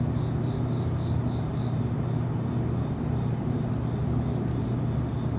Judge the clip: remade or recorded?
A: recorded